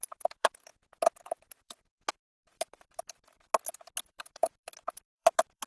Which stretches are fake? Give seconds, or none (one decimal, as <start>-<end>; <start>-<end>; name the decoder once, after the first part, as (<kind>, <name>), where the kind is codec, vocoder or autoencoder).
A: 0.0-0.7 (vocoder, BigVGAN v2); 1.4-3.5; 4.1-5.7